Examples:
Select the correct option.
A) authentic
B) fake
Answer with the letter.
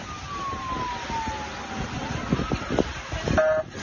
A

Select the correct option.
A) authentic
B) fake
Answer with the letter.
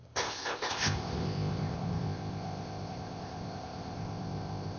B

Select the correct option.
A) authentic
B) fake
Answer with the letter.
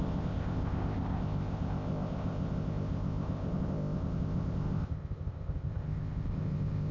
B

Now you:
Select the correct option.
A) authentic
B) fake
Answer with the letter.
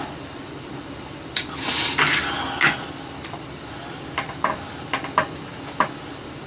A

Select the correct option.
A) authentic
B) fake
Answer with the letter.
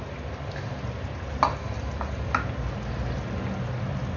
A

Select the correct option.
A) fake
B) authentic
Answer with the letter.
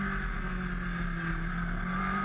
B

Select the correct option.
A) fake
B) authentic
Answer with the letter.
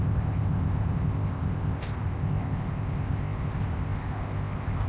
A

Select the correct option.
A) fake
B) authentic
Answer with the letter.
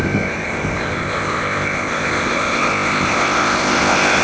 A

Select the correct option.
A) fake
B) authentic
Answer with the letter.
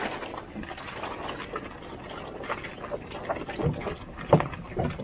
B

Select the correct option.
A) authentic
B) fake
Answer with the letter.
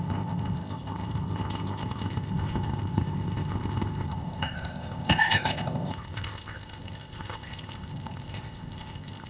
B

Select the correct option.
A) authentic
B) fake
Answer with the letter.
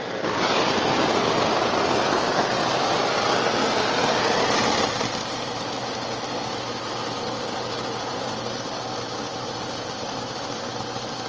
A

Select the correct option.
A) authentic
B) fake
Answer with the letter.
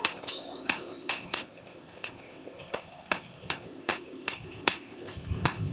B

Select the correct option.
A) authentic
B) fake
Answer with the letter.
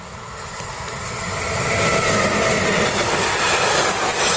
A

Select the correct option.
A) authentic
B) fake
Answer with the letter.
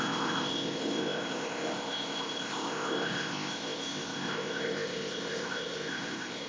B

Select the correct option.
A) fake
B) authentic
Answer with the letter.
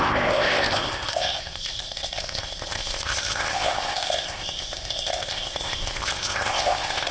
A